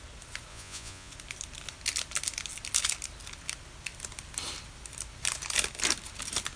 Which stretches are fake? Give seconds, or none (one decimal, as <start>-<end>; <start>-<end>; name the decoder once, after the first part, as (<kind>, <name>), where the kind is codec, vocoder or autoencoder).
0.5-1.1 (vocoder, Vocos)